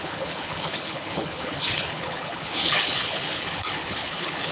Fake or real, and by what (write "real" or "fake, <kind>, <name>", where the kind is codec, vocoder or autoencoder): fake, codec, HILCodec